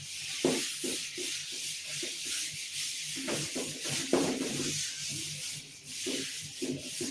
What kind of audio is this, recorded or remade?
remade